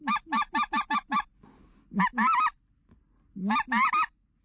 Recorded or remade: recorded